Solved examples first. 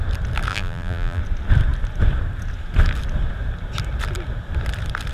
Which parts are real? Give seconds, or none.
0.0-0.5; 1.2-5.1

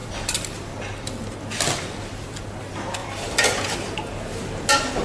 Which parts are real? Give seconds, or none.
2.6-3.0; 4.4-5.0

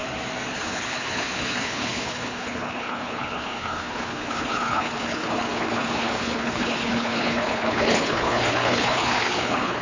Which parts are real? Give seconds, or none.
0.0-0.5

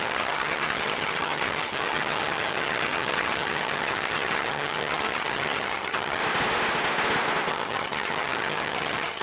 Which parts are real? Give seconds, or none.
6.2-7.5

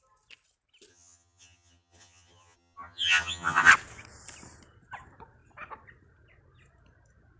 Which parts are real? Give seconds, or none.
0.0-0.9; 3.7-7.4

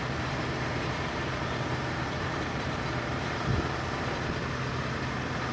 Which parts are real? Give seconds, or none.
3.5-5.5

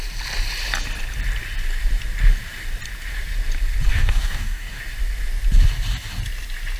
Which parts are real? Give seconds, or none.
0.0-3.9; 4.8-6.8

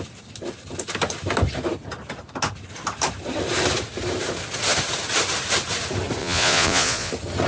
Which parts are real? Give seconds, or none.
0.0-6.2; 7.1-7.5